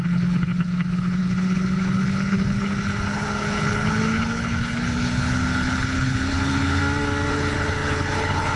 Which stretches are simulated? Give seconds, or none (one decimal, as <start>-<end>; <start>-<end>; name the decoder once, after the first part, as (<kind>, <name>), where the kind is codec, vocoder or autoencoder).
0.0-6.8 (codec, HILCodec); 7.3-8.6